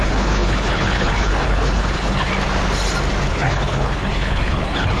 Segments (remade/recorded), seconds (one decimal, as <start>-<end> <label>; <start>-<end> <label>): 0.0-2.3 remade; 2.3-3.3 recorded; 3.3-5.0 remade